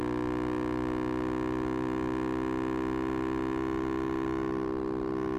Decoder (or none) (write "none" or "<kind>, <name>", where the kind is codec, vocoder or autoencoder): none